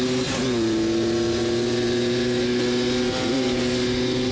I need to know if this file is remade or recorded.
recorded